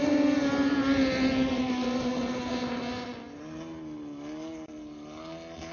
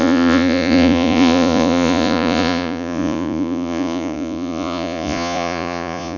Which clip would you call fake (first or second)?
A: second